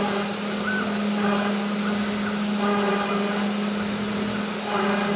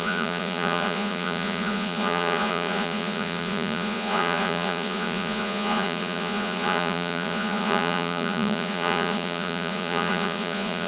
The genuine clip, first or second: first